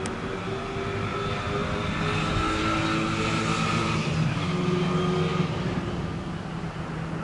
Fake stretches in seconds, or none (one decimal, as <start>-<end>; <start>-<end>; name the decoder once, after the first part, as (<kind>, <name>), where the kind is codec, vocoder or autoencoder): 5.3-6.2 (vocoder, BigVGAN v2)